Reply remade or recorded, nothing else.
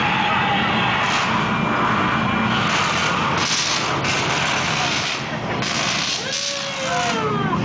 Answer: recorded